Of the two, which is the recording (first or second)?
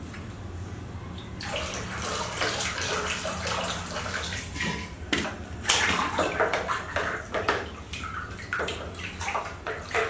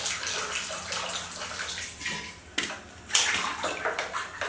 second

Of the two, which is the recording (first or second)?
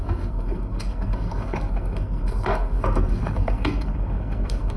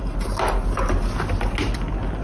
second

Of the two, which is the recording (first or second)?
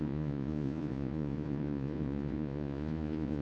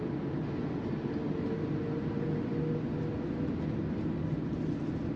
second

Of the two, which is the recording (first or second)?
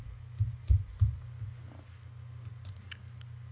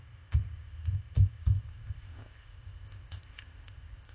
first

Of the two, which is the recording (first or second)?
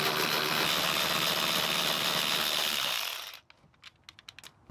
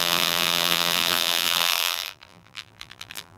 first